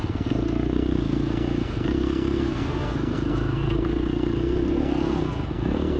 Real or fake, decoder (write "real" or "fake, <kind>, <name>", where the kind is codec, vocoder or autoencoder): fake, codec, SNAC